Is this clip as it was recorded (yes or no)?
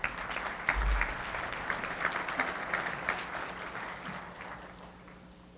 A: yes